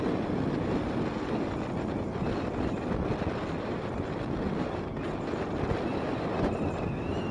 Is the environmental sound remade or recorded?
recorded